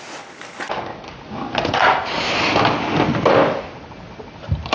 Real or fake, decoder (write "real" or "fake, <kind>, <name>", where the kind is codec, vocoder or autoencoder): real